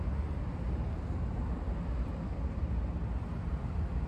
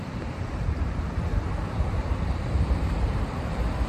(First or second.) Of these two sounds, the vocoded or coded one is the second